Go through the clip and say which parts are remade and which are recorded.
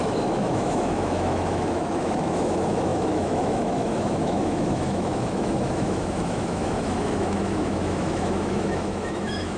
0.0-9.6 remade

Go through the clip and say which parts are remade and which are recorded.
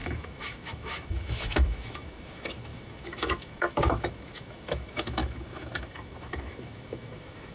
0.0-7.5 remade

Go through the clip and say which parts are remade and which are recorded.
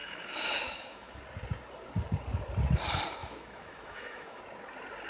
0.0-1.2 remade; 1.2-3.2 recorded; 3.2-4.4 remade; 4.4-5.1 recorded